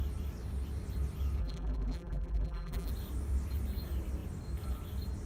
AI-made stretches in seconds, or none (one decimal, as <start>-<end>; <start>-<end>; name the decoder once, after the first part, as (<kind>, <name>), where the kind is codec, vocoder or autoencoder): 1.4-2.9 (vocoder, BigVGAN v2)